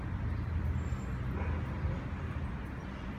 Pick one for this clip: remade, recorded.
recorded